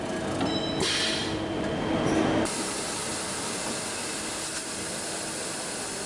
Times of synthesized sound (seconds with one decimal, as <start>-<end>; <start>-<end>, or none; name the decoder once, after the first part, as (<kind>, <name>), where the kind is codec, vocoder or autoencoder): 1.2-1.7 (vocoder, BigVGAN v2)